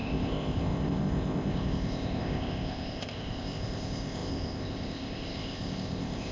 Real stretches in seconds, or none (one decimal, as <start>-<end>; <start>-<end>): none